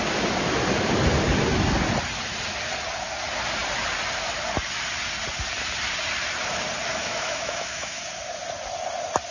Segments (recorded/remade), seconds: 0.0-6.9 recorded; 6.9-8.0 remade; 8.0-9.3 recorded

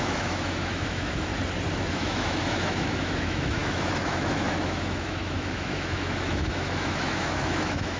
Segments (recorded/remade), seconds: 0.0-1.3 remade; 1.3-1.9 recorded; 1.9-8.0 remade

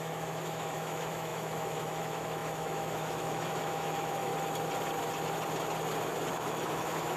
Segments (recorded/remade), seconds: 0.0-4.3 remade; 4.3-6.3 recorded; 6.3-7.2 remade

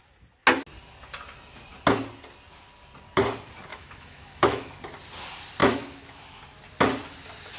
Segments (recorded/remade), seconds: 0.0-3.7 recorded; 3.7-4.8 remade; 4.8-5.6 recorded; 5.6-6.4 remade; 6.4-7.6 recorded

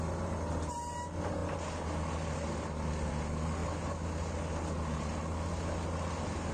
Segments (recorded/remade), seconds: 0.0-6.5 recorded

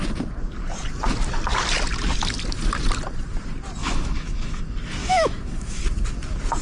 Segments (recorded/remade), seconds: 0.0-3.8 recorded; 3.8-4.6 remade; 4.6-5.0 recorded; 5.0-5.8 remade; 5.8-6.6 recorded

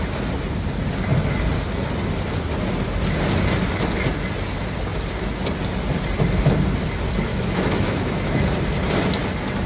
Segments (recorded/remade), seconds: 0.0-7.3 recorded; 7.3-8.4 remade; 8.4-9.7 recorded